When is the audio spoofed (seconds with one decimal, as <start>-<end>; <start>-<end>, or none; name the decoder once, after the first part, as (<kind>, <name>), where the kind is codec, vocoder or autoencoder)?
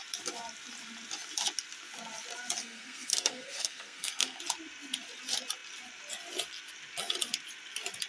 2.6-4.4 (codec, SNAC)